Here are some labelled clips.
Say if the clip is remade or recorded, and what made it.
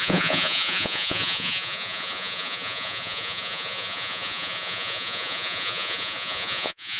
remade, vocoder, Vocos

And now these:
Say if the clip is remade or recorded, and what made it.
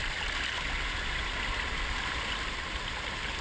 recorded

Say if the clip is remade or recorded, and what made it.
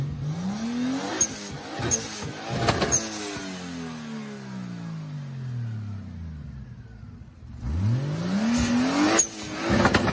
recorded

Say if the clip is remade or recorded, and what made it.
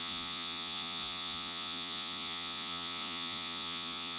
remade, vocoder, Vocos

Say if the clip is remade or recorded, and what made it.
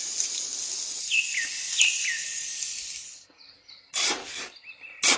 recorded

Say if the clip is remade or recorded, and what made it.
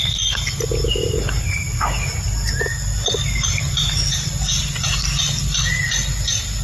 recorded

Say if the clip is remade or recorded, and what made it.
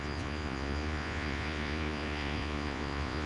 remade, vocoder, Vocos